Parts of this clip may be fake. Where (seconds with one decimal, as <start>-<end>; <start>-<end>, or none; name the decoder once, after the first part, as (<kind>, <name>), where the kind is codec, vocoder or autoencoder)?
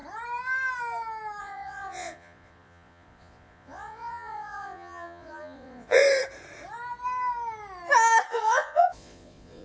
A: 1.4-6.0 (vocoder, Vocos); 8.3-9.6